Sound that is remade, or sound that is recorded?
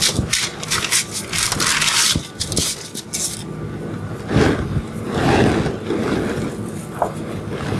recorded